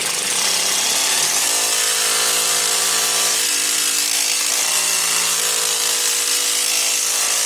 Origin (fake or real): real